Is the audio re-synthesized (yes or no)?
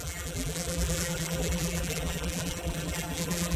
yes